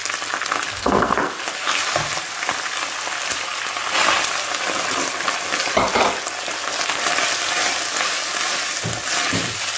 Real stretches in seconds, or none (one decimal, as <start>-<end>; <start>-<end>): 0.0-0.7; 1.4-9.8